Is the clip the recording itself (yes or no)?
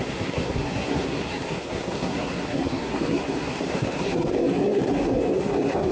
no